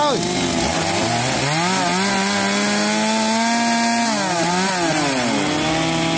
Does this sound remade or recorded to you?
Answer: recorded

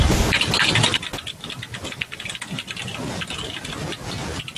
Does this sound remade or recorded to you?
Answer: recorded